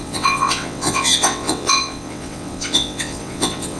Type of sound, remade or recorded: remade